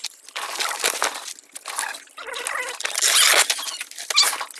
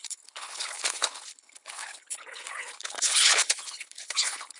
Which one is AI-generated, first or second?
second